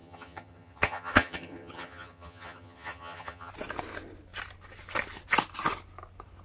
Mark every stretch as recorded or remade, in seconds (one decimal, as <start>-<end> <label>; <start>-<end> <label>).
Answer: 0.0-3.5 remade; 3.5-6.4 recorded